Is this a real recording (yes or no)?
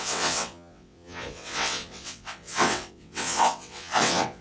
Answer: no